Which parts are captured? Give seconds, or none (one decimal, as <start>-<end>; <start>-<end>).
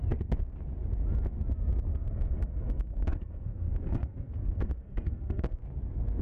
0.0-1.9; 5.6-6.2